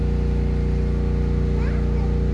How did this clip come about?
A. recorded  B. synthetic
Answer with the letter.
A